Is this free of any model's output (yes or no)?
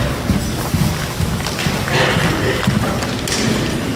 yes